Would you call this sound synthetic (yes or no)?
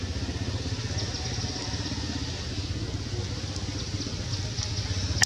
no